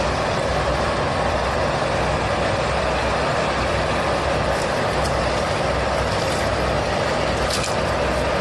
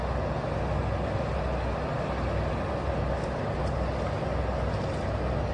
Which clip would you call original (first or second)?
second